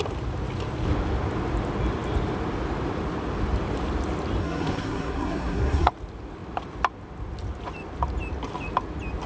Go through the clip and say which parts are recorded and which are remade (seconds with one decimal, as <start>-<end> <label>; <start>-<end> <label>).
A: 0.0-4.4 recorded; 4.4-5.9 remade; 5.9-9.3 recorded